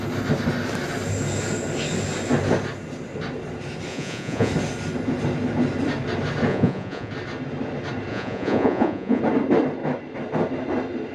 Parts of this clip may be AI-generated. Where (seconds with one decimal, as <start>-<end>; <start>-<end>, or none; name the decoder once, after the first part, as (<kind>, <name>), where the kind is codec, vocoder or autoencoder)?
3.9-4.5 (vocoder, Vocos); 6.5-7.1; 8.1-9.2